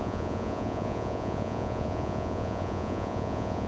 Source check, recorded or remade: remade